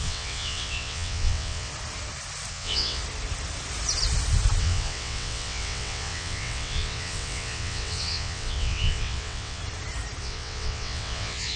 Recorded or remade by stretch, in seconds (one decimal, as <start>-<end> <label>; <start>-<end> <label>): 0.0-1.7 remade; 1.7-2.5 recorded; 2.5-3.0 remade; 3.0-4.6 recorded; 4.6-9.6 remade; 9.6-10.2 recorded; 10.2-11.6 remade